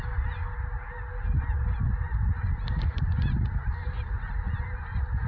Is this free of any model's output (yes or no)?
yes